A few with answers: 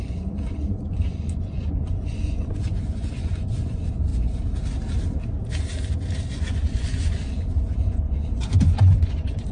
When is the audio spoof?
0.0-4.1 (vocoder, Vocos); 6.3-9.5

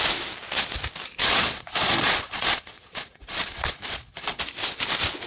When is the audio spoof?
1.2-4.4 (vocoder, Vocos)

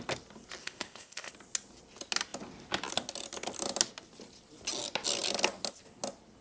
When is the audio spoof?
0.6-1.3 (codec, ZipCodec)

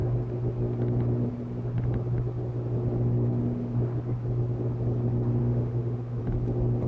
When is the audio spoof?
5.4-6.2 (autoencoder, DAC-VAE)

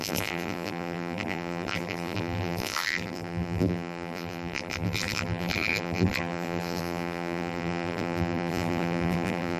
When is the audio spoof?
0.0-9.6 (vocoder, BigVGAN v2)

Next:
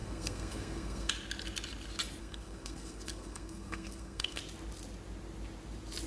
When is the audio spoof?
0.0-1.1 (codec, SNAC); 2.2-4.4

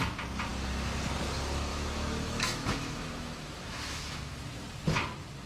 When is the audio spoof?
1.7-4.4 (autoencoder, DAC-VAE)